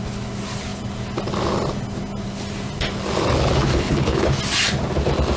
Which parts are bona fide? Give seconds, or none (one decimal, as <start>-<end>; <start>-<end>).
0.0-3.7; 4.3-5.4